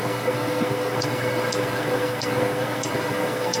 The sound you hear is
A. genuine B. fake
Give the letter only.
B